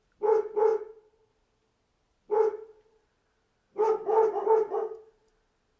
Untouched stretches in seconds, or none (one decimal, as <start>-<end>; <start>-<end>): 0.0-5.8